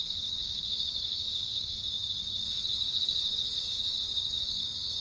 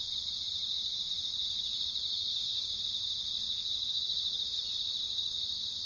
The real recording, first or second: second